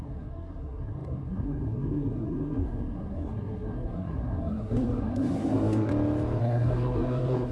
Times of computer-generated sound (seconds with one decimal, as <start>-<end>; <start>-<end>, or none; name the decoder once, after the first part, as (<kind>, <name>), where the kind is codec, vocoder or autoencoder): 0.0-5.9 (codec, SNAC); 6.4-7.5